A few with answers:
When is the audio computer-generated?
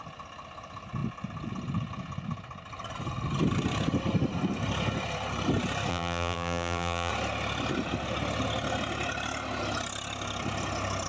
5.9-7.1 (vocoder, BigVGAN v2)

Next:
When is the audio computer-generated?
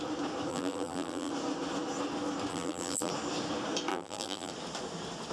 0.5-1.3 (vocoder, BigVGAN v2); 2.5-3.1; 3.9-4.5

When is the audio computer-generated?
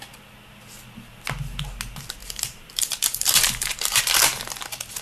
2.2-4.0 (vocoder, BigVGAN v2)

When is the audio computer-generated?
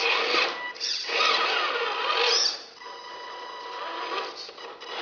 none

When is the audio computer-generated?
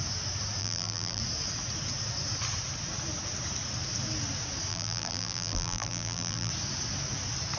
0.6-1.2 (vocoder, BigVGAN v2); 4.7-6.5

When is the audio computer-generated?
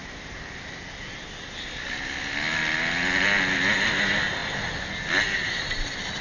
0.0-0.7 (vocoder, BigVGAN v2)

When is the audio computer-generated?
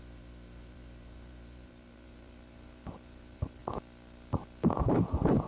0.0-3.6 (vocoder, BigVGAN v2); 4.8-5.5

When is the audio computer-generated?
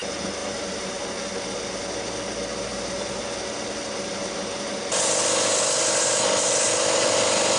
0.4-1.0 (vocoder, BigVGAN v2); 2.7-3.2